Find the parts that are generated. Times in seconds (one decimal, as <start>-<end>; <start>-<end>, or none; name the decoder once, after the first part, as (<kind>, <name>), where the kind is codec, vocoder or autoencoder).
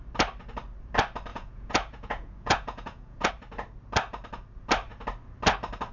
1.3-3.3 (vocoder, Vocos)